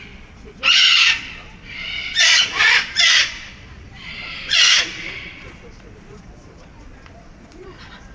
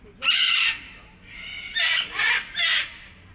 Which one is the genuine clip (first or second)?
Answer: second